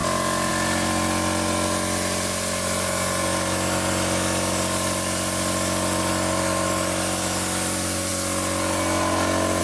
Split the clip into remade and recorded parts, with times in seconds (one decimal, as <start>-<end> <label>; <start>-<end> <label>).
0.0-9.6 recorded